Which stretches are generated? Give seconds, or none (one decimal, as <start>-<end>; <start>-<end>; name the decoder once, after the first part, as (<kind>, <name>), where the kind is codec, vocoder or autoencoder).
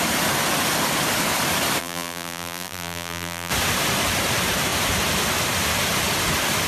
1.8-3.5 (vocoder, BigVGAN v2)